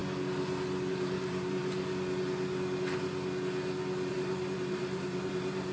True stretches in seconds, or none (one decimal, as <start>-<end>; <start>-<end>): 0.0-0.9; 1.6-4.1